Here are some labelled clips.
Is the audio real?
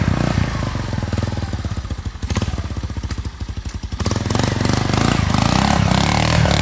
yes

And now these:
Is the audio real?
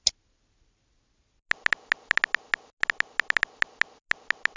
yes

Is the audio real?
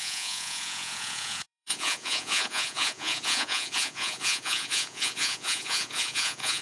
no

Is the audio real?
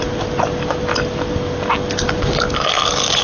yes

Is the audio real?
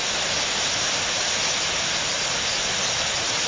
yes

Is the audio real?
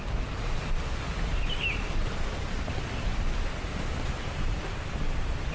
yes